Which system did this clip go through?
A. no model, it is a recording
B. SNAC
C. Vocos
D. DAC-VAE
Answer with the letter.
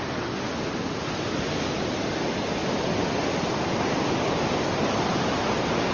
A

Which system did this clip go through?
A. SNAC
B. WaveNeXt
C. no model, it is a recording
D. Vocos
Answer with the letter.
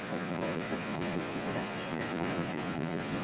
D